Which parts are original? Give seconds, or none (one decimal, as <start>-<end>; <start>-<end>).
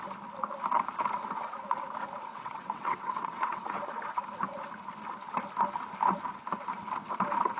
0.0-2.3; 3.7-7.6